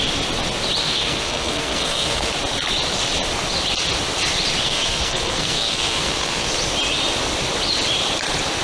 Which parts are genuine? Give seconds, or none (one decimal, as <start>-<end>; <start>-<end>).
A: 0.0-0.8; 2.3-4.6; 6.5-8.6